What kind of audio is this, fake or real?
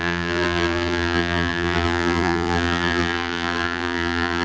fake